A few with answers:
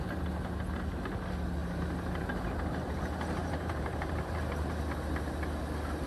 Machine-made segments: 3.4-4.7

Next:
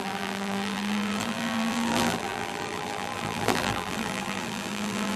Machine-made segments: 0.0-5.2